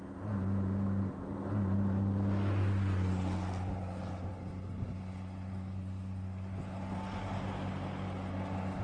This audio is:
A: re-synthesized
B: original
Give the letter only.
B